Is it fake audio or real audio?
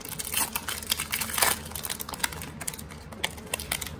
real